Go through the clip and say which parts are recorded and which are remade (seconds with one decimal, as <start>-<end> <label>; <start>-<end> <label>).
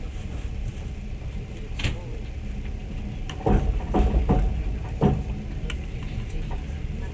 0.0-7.1 recorded